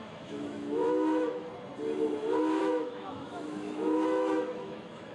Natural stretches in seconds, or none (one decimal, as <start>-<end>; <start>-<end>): 1.5-2.6